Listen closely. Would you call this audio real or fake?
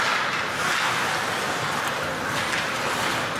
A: real